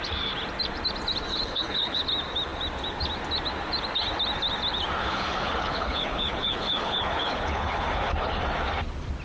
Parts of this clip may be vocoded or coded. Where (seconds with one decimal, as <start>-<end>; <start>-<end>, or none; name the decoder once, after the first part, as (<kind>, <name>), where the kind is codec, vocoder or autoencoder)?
1.3-2.1 (codec, HILCodec); 5.0-8.4